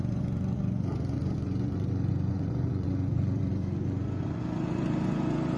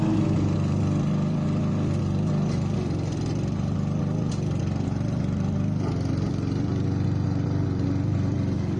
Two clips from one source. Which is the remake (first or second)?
first